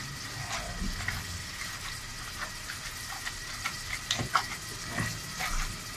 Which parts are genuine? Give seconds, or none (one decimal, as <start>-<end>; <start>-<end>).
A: 0.0-6.0